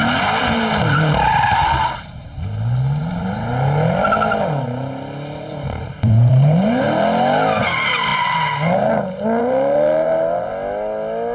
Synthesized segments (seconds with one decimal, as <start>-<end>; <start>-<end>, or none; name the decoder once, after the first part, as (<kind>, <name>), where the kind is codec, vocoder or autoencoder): 0.4-2.4 (vocoder, BigVGAN v2); 3.0-6.8; 9.4-10.5